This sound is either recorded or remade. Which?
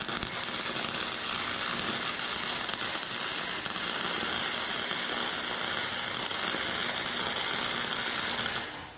recorded